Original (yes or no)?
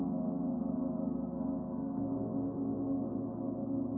no